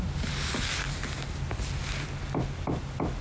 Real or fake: real